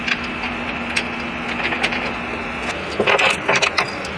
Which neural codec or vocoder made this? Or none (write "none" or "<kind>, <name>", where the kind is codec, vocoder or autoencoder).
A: none